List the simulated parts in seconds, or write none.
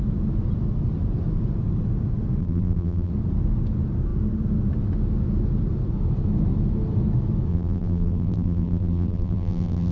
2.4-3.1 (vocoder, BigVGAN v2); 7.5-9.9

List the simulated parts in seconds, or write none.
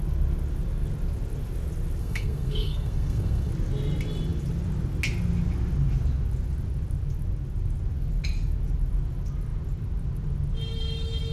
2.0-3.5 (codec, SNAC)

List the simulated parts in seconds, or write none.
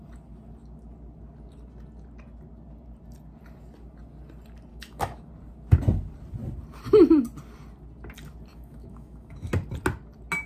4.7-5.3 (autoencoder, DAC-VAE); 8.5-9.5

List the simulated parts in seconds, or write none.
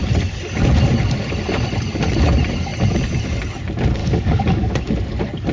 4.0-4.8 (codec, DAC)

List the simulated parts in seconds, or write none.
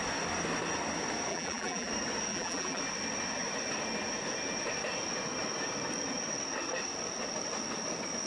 1.3-1.9 (vocoder, BigVGAN v2); 2.3-2.8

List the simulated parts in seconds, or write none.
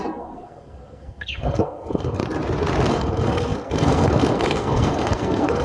0.0-2.2 (codec, SNAC); 2.9-5.6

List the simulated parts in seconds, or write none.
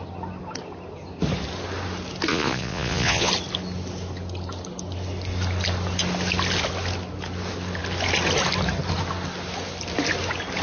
2.3-3.3 (vocoder, Vocos)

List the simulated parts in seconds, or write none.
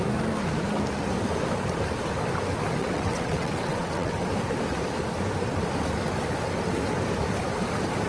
2.8-4.2 (vocoder, WaveNeXt)